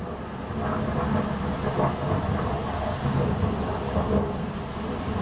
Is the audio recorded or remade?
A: recorded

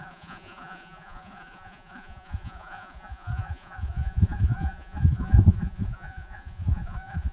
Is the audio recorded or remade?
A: remade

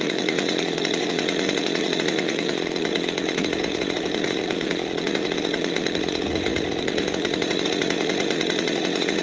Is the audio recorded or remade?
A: remade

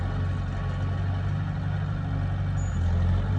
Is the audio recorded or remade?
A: recorded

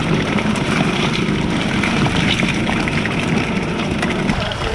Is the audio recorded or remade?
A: remade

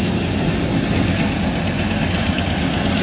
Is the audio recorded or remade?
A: recorded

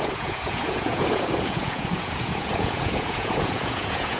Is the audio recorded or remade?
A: remade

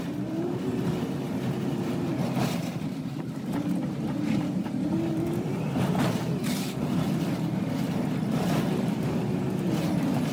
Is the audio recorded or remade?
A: remade